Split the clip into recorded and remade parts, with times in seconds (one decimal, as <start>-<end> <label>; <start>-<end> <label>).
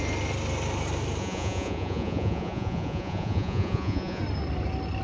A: 0.0-1.2 recorded; 1.2-4.2 remade; 4.2-5.0 recorded